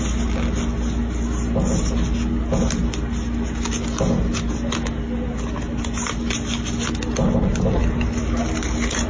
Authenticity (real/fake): real